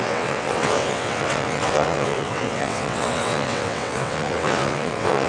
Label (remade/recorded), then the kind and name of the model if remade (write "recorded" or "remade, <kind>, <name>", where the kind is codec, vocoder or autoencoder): remade, vocoder, WaveNeXt